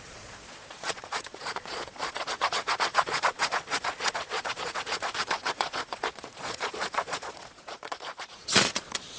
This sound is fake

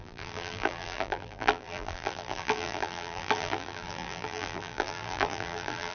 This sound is fake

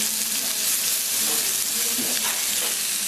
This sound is real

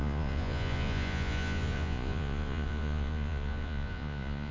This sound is fake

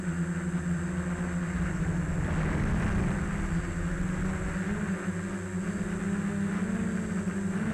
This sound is real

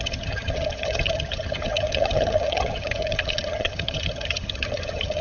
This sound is fake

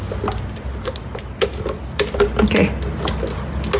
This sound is real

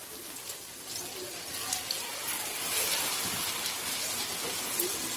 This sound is real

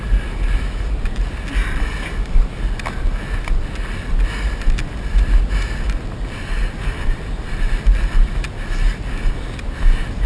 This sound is real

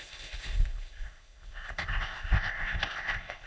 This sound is fake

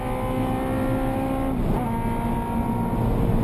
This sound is real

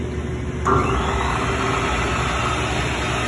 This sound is real